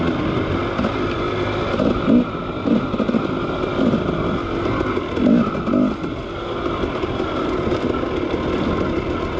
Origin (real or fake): real